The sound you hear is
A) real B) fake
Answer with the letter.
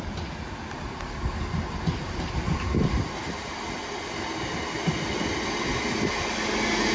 A